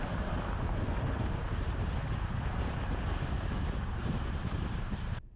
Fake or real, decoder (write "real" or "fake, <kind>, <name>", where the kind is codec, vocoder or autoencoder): fake, vocoder, BigVGAN v2